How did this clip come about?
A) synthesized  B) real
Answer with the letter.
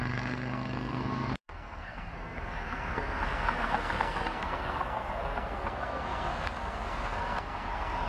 A